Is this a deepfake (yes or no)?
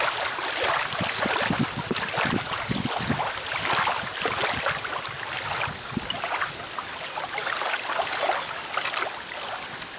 no